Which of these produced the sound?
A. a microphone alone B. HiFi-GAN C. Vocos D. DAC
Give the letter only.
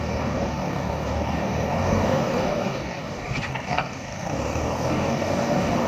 D